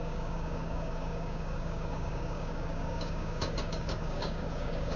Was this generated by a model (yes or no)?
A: yes